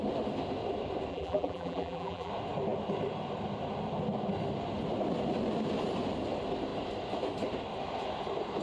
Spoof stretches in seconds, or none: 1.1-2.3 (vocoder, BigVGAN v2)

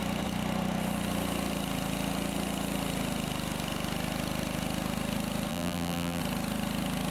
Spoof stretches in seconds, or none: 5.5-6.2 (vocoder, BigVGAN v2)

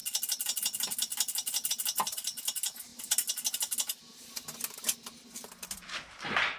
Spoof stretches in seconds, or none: none

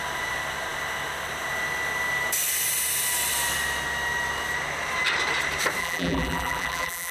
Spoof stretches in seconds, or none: 5.8-7.1 (vocoder, BigVGAN v2)

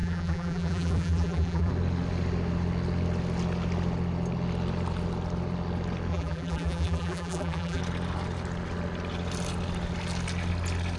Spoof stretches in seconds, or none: 0.0-1.7 (vocoder, BigVGAN v2); 6.1-7.8